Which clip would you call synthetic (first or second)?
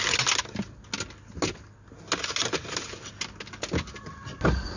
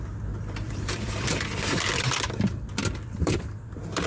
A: second